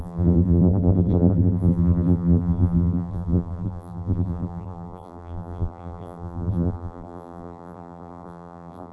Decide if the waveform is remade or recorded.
remade